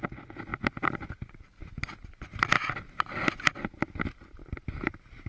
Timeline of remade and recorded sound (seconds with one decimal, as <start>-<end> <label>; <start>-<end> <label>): 0.0-4.4 recorded; 4.4-5.3 remade